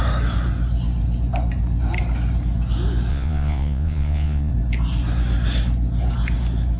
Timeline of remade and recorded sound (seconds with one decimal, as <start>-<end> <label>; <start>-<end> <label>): 0.0-3.1 recorded; 3.1-4.5 remade; 4.5-6.8 recorded